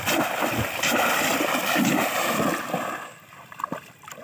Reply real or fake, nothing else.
real